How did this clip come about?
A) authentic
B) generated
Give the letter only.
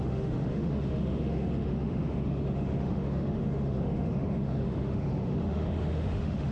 B